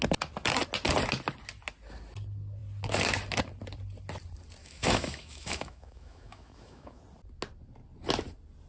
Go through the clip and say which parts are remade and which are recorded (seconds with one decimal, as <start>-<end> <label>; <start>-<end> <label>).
0.0-4.6 recorded; 4.6-7.0 remade; 7.0-8.7 recorded